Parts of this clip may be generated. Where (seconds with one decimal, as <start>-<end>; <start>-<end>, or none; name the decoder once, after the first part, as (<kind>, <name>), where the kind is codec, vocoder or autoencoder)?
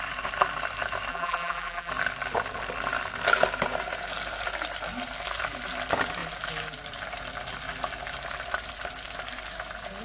1.1-1.9 (vocoder, BigVGAN v2)